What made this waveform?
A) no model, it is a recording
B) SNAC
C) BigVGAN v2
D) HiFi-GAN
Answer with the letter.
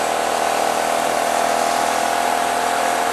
A